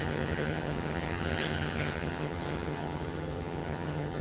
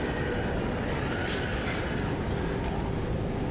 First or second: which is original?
second